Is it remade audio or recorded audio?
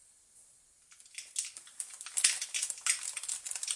recorded